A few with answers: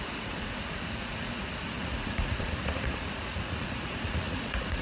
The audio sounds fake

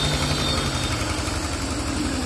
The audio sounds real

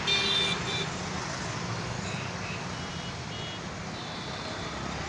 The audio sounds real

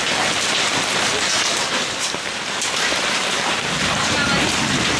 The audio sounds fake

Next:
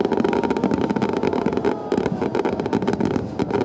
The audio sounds real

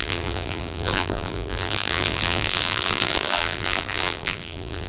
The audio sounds fake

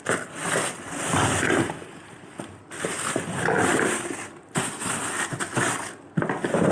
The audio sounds real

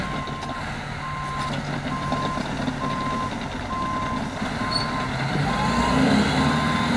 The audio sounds real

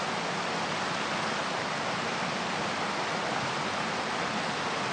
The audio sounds real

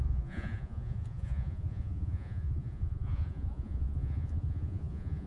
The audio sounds fake